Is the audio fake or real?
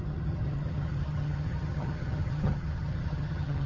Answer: fake